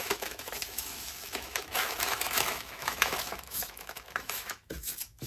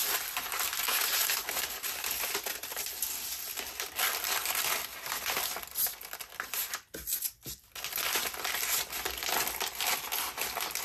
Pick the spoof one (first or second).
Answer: first